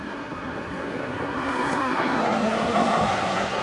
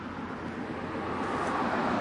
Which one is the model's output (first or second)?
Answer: first